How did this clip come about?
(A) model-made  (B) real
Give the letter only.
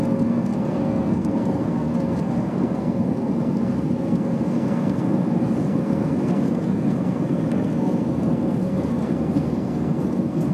A